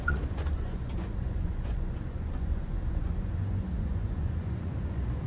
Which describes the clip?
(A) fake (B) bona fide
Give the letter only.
A